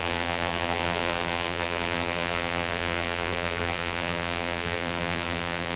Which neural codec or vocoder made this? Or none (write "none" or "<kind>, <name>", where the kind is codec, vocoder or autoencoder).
vocoder, BigVGAN v2